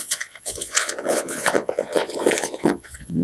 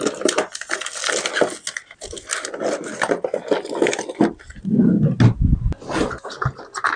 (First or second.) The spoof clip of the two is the first